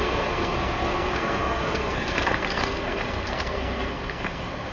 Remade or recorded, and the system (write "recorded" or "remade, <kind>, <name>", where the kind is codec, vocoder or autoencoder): remade, codec, SNAC